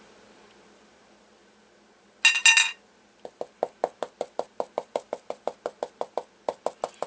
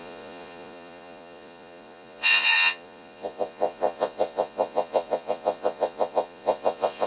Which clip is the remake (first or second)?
second